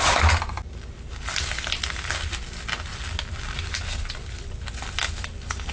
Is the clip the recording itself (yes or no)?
yes